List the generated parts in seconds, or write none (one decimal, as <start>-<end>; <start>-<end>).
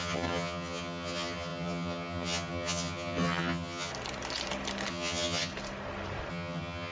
0.0-3.9; 4.9-5.5; 6.3-6.9